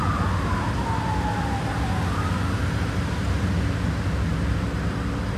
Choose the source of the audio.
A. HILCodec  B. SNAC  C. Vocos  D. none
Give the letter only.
D